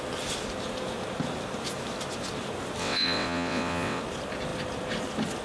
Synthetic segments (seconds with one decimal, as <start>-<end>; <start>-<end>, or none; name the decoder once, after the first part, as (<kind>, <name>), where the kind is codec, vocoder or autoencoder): 2.8-4.0 (vocoder, WaveNeXt)